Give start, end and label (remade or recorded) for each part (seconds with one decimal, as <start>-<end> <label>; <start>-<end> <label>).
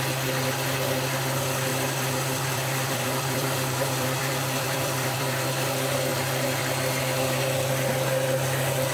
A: 0.0-1.7 recorded; 1.7-5.5 remade; 5.5-8.9 recorded